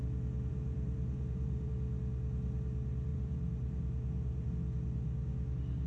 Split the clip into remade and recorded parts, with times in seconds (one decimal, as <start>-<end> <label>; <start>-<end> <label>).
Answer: 0.0-0.5 recorded; 0.5-1.7 remade; 1.7-3.1 recorded; 3.1-4.5 remade; 4.5-5.9 recorded

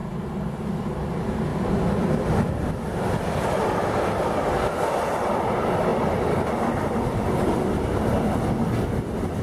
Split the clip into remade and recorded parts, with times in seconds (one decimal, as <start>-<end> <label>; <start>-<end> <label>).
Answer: 0.0-1.5 recorded; 1.5-5.3 remade; 5.3-9.4 recorded

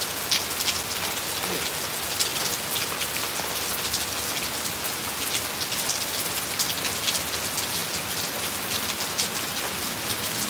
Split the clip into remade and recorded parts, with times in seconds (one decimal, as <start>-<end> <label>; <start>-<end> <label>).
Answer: 0.0-10.5 recorded

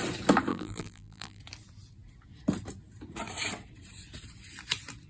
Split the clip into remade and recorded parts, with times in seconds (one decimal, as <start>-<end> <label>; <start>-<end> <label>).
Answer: 0.0-0.5 recorded; 0.5-1.4 remade; 1.4-5.1 recorded

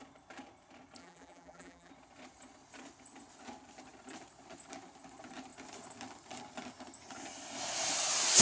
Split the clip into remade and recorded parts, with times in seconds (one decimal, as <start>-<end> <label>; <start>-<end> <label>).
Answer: 0.0-1.0 recorded; 1.0-1.9 remade; 1.9-8.4 recorded

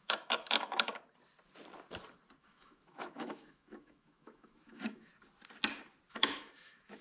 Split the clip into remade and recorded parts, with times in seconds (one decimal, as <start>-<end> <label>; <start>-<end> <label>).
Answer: 0.0-0.9 remade; 0.9-2.4 recorded; 2.4-5.1 remade; 5.1-6.1 recorded; 6.1-7.0 remade

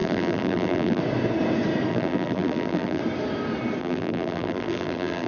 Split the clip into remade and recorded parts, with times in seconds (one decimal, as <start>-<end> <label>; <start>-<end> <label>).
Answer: 0.0-1.0 remade; 1.0-1.9 recorded; 1.9-3.0 remade; 3.0-3.8 recorded; 3.8-5.3 remade